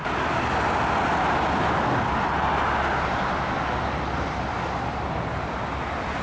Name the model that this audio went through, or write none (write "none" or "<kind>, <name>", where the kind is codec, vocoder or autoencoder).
none